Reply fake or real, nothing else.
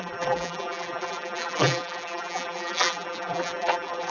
fake